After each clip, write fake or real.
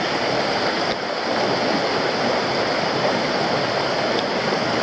real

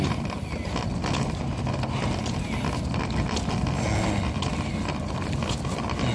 real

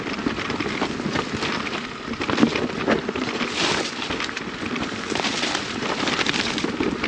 fake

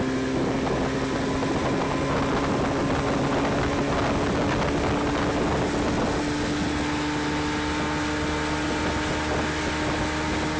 real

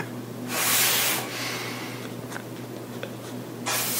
real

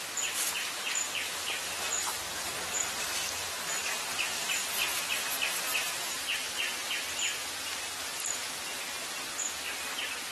real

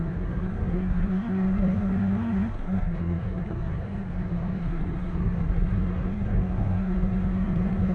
fake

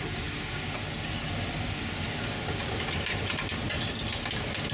real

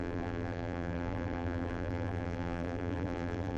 fake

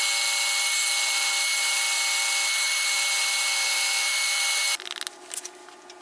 real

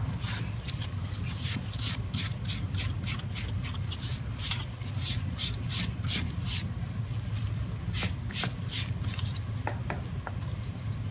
real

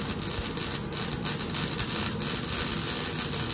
real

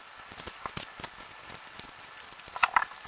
real